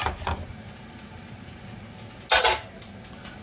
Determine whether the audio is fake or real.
real